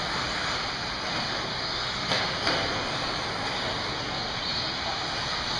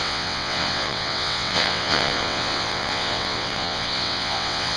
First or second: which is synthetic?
second